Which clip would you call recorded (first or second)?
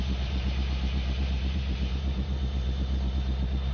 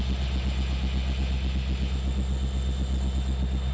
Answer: second